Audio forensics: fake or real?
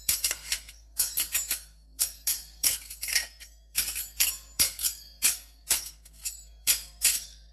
fake